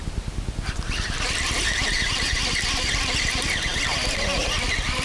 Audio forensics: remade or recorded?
recorded